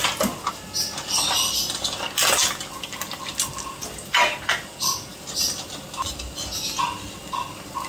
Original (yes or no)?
yes